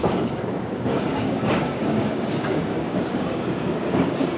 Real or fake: fake